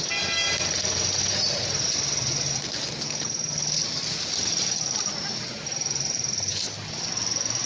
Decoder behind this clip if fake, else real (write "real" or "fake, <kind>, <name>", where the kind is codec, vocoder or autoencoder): real